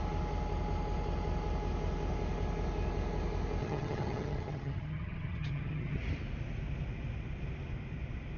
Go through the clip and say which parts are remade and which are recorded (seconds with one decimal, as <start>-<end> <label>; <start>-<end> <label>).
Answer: 0.0-3.6 recorded; 3.6-6.0 remade; 6.0-8.4 recorded